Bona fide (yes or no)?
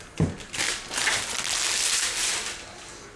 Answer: yes